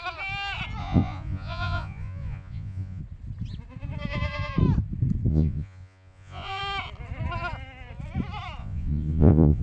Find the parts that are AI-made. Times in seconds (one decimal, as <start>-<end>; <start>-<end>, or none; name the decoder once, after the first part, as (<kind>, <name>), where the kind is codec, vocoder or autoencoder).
0.8-3.0 (vocoder, Vocos); 5.3-6.6; 8.6-9.6